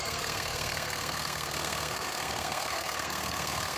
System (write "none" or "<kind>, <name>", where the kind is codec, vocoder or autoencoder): codec, SNAC